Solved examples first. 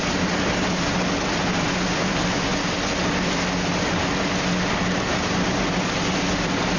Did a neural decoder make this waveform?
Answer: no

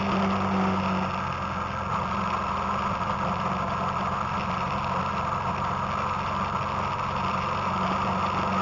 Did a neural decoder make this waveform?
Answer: no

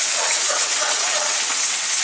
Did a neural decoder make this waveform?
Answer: yes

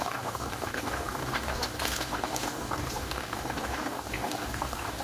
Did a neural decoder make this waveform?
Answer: yes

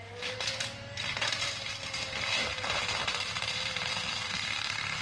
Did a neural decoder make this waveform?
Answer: yes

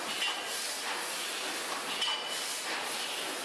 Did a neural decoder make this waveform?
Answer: no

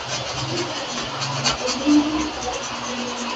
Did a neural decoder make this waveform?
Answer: no